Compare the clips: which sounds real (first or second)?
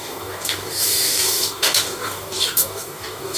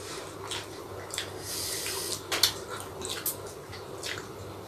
second